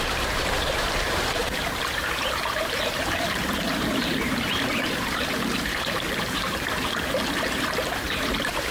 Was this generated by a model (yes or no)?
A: yes